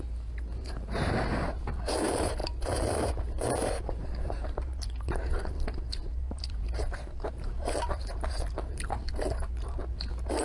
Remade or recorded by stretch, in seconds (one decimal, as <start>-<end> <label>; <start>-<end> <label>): 0.0-2.4 remade; 2.4-3.2 recorded; 3.2-9.8 remade; 9.8-10.4 recorded